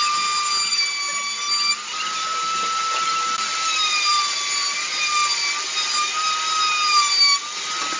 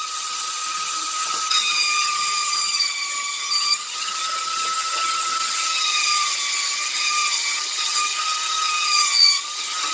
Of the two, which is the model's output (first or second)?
second